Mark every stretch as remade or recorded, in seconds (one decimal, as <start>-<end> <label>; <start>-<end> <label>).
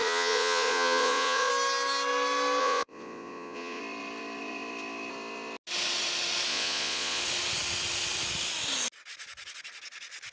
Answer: 0.0-1.5 remade; 1.5-2.6 recorded; 2.6-3.8 remade; 3.8-6.5 recorded; 6.5-7.2 remade; 7.2-10.3 recorded